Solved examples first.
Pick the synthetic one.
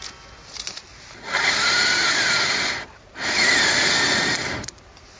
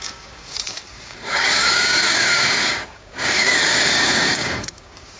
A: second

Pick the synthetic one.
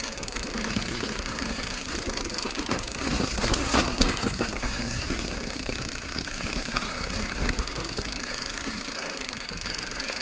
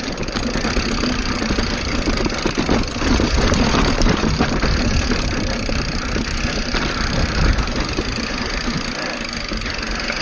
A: first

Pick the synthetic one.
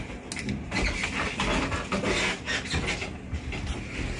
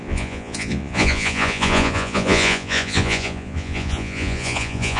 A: second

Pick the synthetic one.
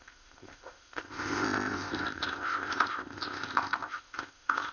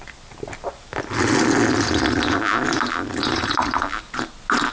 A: first